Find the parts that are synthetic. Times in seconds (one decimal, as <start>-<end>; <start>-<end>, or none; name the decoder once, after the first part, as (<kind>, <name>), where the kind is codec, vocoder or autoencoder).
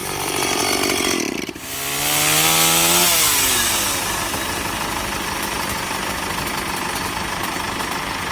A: 0.0-0.6 (vocoder, BigVGAN v2)